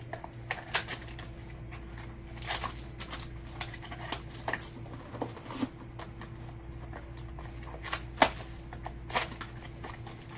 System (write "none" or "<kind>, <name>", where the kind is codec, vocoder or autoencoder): none